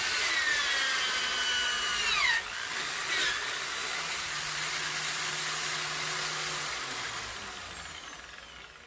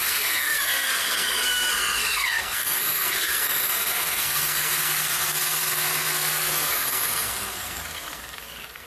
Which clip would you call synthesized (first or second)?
second